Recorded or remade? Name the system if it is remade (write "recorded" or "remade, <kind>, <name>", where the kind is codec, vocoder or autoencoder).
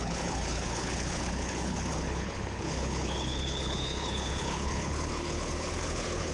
remade, codec, HILCodec